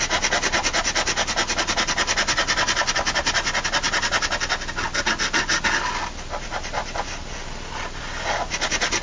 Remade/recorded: recorded